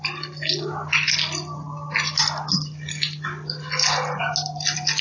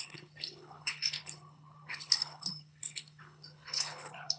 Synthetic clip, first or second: second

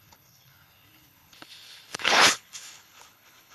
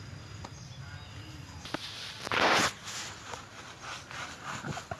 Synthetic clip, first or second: first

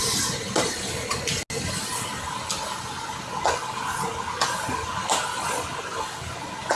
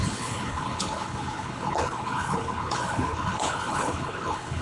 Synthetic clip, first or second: second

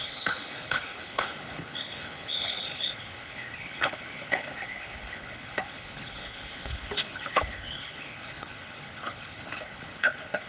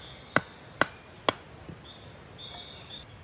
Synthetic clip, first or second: first